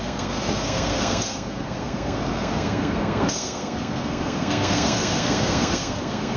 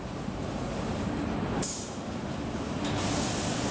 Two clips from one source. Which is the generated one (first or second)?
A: first